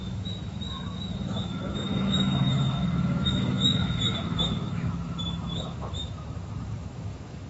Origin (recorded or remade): remade